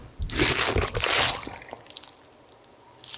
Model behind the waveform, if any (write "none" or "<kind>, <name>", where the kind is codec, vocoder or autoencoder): none